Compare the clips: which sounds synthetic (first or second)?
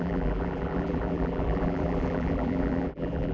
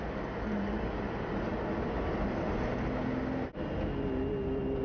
first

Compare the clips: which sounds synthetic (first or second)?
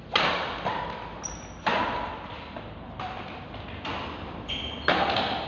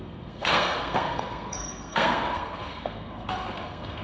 second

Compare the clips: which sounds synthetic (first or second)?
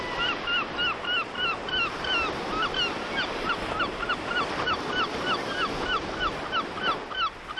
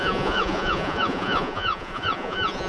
second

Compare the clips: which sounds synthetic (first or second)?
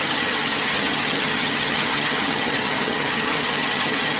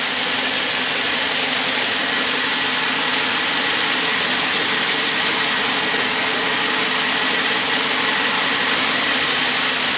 first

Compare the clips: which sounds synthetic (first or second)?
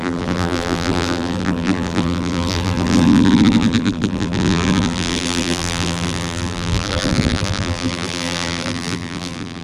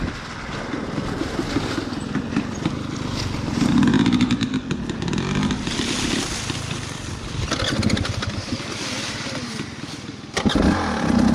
first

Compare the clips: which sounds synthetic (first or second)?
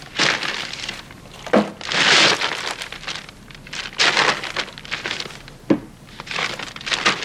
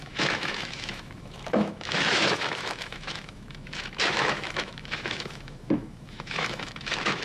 second